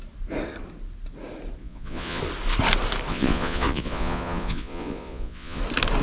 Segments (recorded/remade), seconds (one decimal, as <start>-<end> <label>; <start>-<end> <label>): 0.0-1.6 recorded; 1.6-2.2 remade; 2.2-3.1 recorded; 3.1-5.6 remade; 5.6-6.0 recorded